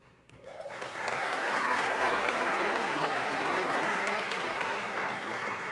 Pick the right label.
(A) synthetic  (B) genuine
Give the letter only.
A